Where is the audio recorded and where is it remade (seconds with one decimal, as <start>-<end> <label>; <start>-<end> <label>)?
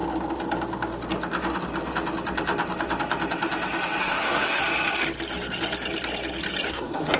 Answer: 0.0-4.0 recorded; 4.0-4.6 remade; 4.6-6.7 recorded; 6.7-7.2 remade